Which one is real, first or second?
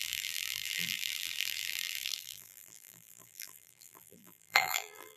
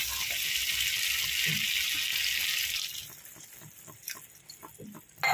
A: second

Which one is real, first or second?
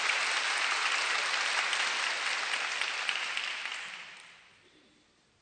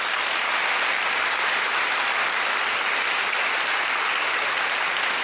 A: second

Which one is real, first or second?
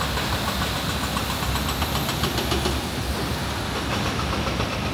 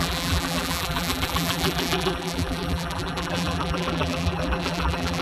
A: first